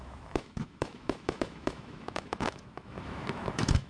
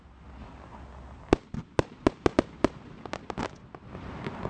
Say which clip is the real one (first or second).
second